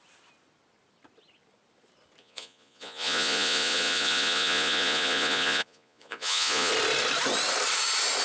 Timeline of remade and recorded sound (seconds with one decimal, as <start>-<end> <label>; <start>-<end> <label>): 0.0-2.2 recorded; 2.2-6.7 remade; 6.7-8.2 recorded